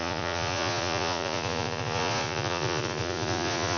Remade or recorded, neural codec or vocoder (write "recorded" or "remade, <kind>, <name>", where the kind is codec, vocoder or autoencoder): remade, vocoder, Vocos